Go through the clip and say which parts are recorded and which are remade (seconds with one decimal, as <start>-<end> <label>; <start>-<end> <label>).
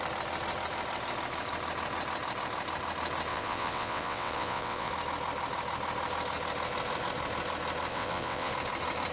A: 0.0-3.3 recorded; 3.3-4.9 remade; 4.9-7.9 recorded; 7.9-8.5 remade; 8.5-9.1 recorded